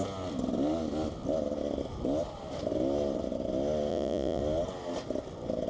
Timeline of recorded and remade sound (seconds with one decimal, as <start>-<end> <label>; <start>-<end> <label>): 0.0-3.9 recorded; 3.9-4.4 remade; 4.4-5.7 recorded